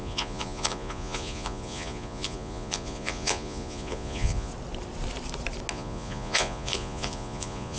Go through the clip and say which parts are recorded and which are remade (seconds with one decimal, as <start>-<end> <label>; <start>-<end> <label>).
0.0-4.5 remade; 4.5-5.7 recorded; 5.7-7.8 remade